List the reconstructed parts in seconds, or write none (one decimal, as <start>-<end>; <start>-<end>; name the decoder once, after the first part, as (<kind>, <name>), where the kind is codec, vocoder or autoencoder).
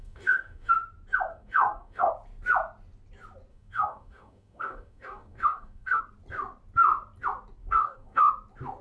0.0-0.7 (codec, DAC); 1.3-2.1; 3.5-6.0; 7.6-8.3